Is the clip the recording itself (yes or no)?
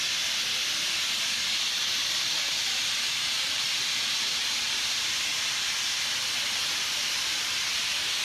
yes